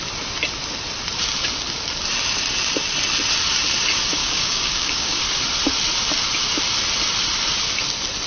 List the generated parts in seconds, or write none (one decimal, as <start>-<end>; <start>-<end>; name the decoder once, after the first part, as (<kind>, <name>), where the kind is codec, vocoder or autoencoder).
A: 4.2-5.2 (codec, DAC)